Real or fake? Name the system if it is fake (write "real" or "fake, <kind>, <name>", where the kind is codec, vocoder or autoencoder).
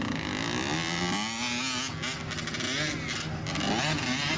real